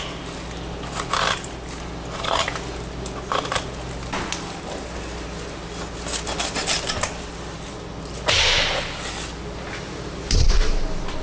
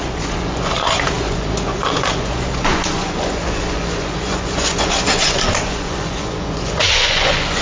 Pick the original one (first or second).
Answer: first